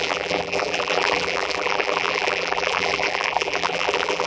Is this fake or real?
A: fake